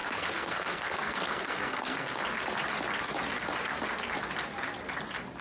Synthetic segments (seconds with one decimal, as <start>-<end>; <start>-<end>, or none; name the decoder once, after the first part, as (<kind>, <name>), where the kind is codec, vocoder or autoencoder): 0.0-2.2 (codec, SNAC)